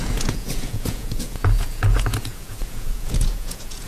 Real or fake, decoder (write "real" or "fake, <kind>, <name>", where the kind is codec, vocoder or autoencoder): fake, vocoder, Vocos